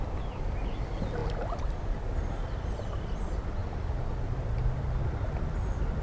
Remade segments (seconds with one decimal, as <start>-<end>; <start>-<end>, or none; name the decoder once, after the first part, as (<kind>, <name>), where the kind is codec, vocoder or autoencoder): none